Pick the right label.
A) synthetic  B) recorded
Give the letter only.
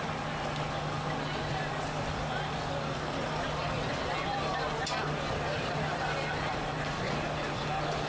B